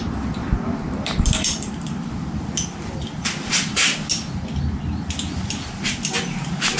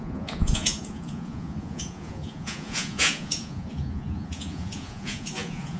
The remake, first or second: second